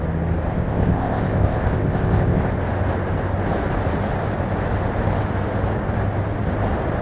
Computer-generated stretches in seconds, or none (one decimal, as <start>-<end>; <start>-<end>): 0.5-2.5